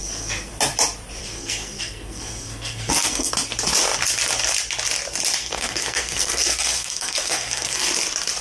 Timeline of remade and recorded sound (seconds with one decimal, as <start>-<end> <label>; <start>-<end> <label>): 0.0-0.5 remade; 0.5-1.2 recorded; 1.2-3.3 remade; 3.3-5.4 recorded; 5.4-7.9 remade; 7.9-8.4 recorded